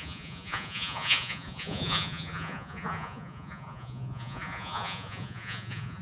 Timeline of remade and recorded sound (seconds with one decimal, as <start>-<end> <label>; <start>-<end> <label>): 0.0-6.0 remade